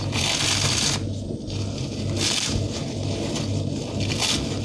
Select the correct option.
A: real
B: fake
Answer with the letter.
B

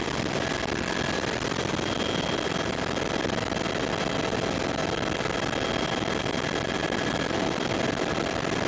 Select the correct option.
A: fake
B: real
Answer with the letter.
B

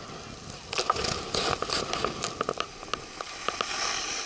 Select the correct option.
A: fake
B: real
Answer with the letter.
B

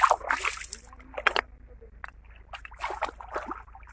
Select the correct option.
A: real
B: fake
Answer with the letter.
A